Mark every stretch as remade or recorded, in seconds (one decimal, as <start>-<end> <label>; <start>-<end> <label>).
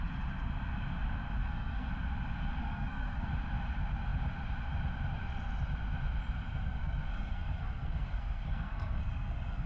0.0-1.4 recorded; 1.4-1.9 remade; 1.9-2.6 recorded; 2.6-3.3 remade; 3.3-6.8 recorded; 6.8-9.7 remade